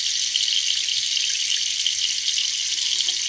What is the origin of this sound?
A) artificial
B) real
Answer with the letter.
B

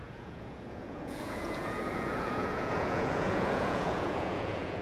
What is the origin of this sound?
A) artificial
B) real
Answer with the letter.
A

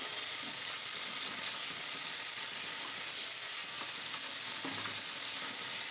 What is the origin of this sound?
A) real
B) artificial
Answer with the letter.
A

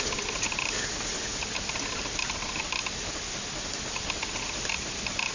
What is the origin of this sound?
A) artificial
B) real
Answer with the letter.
B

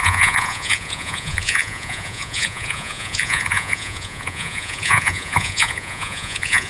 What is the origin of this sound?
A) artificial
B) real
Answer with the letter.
A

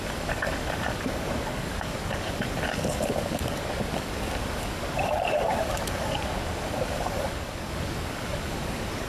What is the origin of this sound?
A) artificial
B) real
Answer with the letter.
A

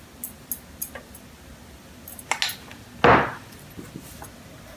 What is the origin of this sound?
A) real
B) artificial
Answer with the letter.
A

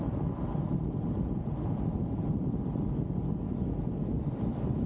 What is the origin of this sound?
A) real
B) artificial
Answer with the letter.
A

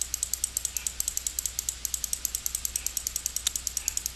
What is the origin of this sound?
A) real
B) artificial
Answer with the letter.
A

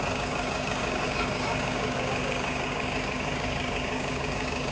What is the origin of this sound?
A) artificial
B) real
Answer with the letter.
A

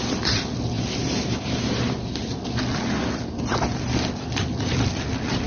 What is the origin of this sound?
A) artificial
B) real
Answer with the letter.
A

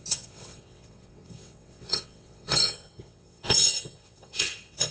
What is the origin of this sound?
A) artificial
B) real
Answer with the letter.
A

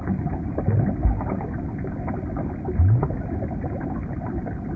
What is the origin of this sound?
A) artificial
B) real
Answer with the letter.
B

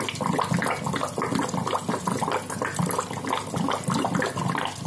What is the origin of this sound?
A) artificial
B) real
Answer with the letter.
B